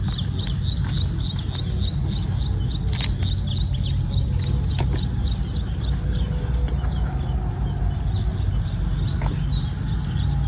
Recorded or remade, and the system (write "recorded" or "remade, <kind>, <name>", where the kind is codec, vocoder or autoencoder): recorded